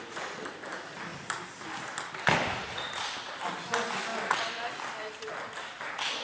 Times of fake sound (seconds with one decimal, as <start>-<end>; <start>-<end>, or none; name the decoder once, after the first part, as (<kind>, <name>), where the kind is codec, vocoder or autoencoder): none